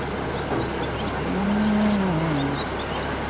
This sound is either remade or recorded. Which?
recorded